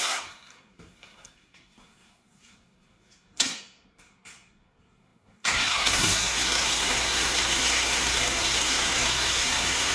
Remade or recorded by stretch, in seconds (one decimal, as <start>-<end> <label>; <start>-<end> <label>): 0.0-9.9 remade